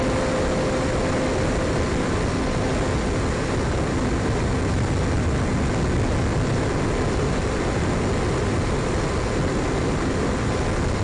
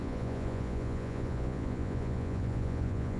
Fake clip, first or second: second